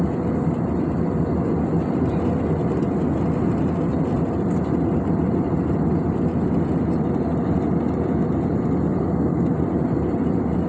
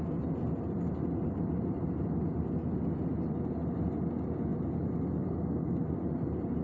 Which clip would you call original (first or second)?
second